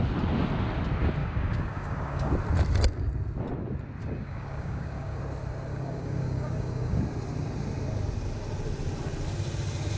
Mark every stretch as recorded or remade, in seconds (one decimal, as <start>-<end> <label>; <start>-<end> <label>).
0.0-1.2 recorded; 1.2-2.3 remade; 2.3-4.0 recorded; 4.0-5.2 remade; 5.2-5.7 recorded; 5.7-7.0 remade; 7.0-10.0 recorded